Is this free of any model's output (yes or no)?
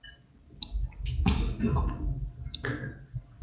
yes